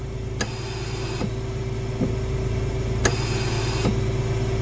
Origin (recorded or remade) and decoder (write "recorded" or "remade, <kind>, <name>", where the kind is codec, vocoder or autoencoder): recorded